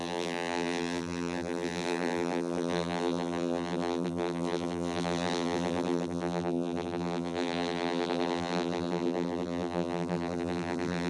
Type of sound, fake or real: fake